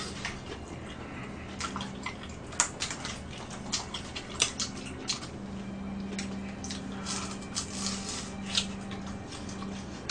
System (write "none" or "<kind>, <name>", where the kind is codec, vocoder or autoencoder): none